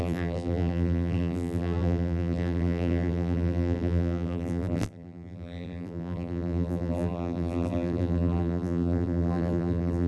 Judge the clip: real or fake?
fake